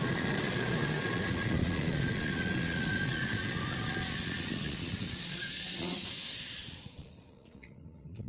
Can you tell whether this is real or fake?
fake